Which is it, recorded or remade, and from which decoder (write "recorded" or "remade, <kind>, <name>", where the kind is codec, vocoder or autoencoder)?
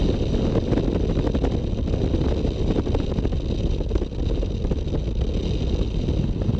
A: recorded